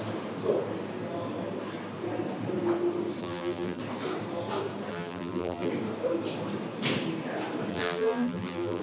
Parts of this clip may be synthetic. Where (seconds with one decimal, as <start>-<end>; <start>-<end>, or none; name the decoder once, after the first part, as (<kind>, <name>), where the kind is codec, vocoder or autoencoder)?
3.2-3.8 (vocoder, BigVGAN v2); 4.9-5.7; 7.7-8.8